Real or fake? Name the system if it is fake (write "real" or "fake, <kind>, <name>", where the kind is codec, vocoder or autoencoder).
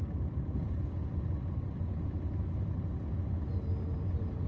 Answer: real